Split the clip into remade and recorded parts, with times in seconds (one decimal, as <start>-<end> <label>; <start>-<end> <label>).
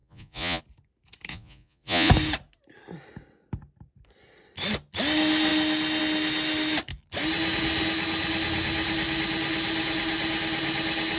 0.0-0.6 remade; 0.6-1.3 recorded; 1.3-2.1 remade; 2.1-11.2 recorded